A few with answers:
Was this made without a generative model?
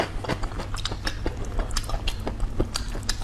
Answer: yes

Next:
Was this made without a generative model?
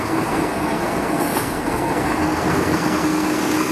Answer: no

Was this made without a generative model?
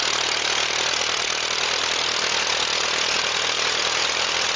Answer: no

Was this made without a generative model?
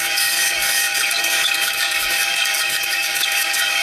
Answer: no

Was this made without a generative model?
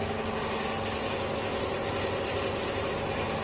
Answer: yes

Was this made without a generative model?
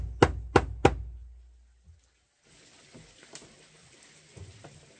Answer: yes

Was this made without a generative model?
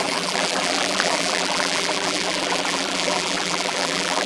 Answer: no